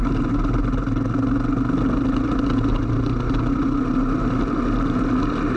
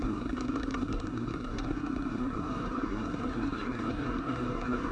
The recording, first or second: first